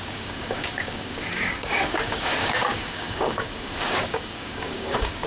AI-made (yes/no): yes